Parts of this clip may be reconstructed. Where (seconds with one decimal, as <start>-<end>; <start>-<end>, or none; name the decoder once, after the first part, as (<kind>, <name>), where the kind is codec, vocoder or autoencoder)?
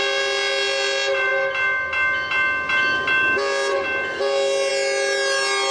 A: none